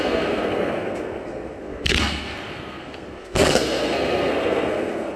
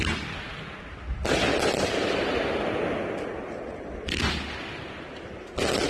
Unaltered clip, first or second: second